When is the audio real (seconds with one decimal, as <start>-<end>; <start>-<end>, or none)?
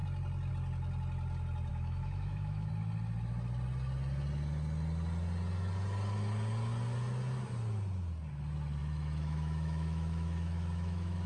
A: 0.0-1.7; 2.7-8.8